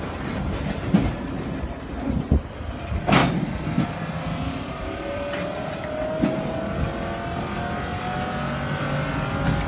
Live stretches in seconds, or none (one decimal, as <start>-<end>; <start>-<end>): 0.0-3.2; 5.7-9.7